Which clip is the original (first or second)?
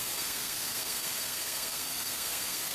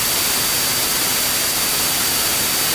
second